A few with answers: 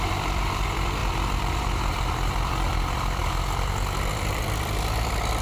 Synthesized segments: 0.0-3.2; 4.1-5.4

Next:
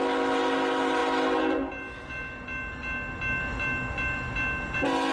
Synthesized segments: none

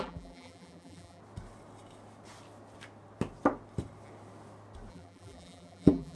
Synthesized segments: 0.0-1.2; 4.9-6.2

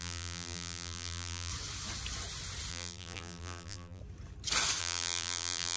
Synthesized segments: 0.0-1.5; 2.7-4.0; 4.8-5.8